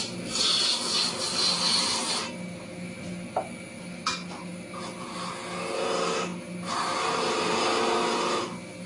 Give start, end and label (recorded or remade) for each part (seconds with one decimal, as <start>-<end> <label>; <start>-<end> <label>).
0.0-8.9 recorded